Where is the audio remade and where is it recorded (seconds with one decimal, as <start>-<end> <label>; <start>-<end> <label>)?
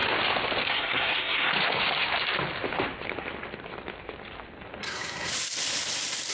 0.0-0.7 recorded; 0.7-1.5 remade; 1.5-4.8 recorded; 4.8-5.3 remade; 5.3-6.3 recorded